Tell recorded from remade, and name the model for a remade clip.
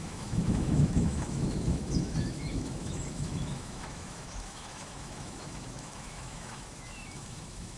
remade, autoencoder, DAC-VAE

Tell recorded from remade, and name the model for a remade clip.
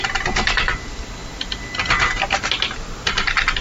recorded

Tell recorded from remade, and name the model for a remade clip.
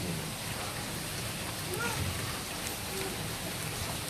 recorded